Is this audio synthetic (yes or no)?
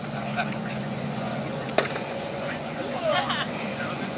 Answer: yes